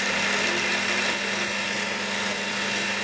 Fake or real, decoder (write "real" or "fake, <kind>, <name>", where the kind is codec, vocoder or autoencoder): real